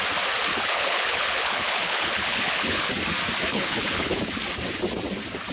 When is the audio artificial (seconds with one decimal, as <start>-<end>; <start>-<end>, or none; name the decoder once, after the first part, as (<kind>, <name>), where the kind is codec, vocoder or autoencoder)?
0.5-2.9 (codec, HILCodec); 3.5-4.2